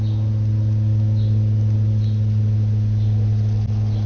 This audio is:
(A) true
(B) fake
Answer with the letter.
A